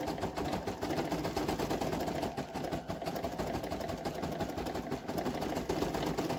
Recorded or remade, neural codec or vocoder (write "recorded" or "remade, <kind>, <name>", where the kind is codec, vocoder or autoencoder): recorded